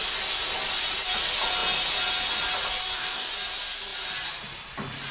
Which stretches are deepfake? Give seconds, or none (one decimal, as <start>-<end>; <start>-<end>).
2.8-3.3